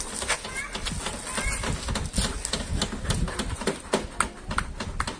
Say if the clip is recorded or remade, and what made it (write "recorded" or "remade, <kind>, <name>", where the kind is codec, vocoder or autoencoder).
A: recorded